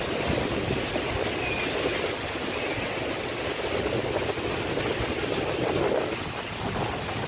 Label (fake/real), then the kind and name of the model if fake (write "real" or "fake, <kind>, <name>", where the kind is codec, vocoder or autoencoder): real